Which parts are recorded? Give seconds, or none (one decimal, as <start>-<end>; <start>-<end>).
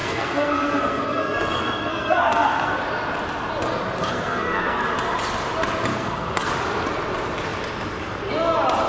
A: 2.8-4.0; 4.9-5.9; 6.5-8.9